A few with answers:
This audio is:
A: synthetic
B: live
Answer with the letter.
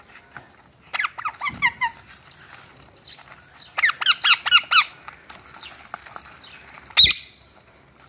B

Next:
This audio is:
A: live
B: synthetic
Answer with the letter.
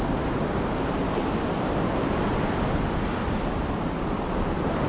A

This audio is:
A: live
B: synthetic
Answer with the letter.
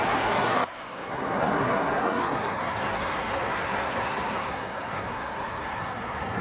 B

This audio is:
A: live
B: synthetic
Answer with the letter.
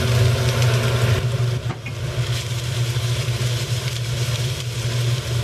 A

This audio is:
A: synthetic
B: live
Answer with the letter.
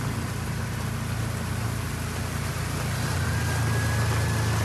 B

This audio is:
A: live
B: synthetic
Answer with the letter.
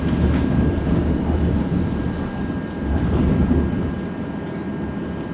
A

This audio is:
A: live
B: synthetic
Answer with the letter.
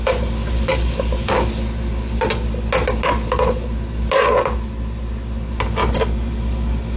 A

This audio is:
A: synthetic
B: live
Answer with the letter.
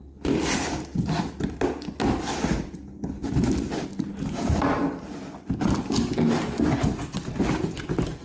B